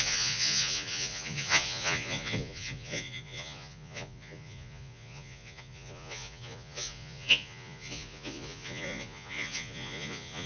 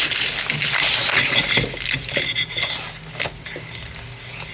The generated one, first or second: first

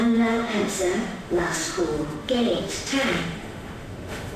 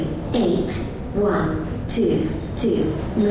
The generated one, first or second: first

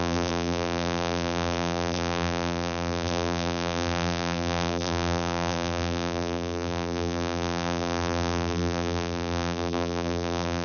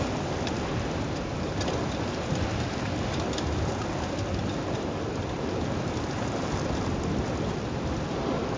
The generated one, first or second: first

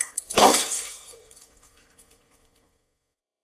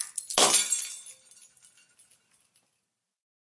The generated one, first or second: first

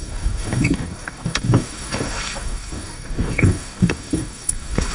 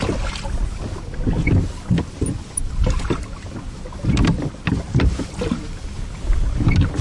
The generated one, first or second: first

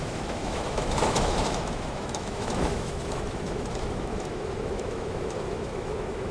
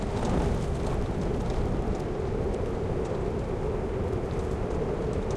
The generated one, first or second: first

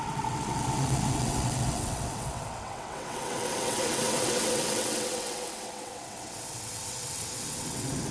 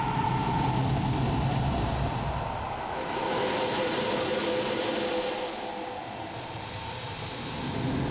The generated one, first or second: first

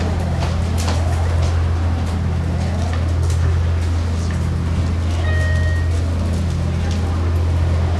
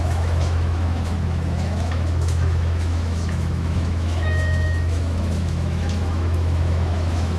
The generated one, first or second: second